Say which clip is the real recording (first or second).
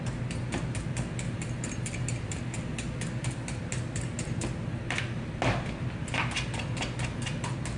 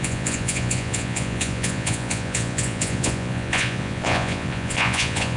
first